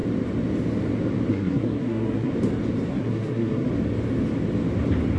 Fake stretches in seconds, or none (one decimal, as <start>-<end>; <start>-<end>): 1.3-2.3; 2.9-3.7